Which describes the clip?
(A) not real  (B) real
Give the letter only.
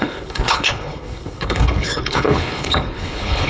A